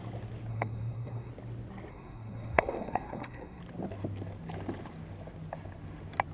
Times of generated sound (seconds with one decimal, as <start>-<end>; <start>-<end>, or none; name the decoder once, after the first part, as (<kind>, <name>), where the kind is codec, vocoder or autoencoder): 0.5-1.3 (codec, SNAC); 1.9-3.6